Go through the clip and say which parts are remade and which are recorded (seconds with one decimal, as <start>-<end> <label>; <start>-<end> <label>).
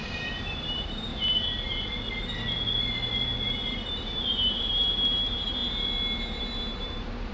0.0-1.1 remade; 1.1-4.5 recorded; 4.5-5.6 remade; 5.6-6.4 recorded; 6.4-7.3 remade